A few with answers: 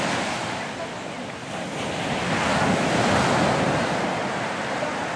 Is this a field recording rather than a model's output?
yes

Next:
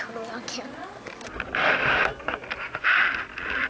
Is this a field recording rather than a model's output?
yes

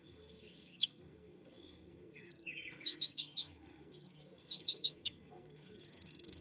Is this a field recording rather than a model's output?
no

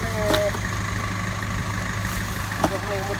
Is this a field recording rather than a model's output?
yes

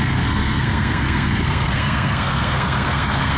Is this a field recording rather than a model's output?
no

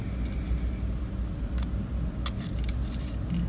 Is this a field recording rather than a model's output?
yes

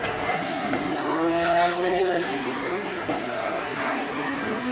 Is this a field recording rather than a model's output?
no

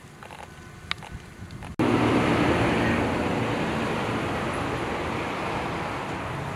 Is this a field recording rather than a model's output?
yes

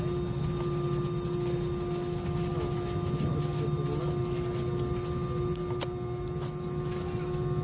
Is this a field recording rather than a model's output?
yes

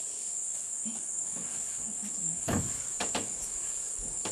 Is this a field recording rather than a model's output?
no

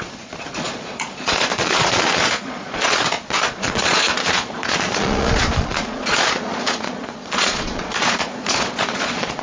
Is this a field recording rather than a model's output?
no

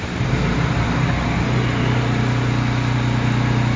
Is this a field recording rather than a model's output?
no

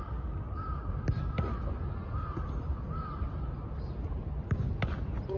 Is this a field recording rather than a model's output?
yes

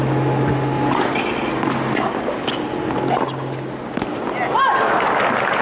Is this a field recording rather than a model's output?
yes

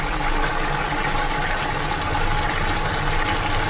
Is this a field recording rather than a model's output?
yes